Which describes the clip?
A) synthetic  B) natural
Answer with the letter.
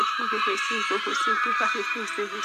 A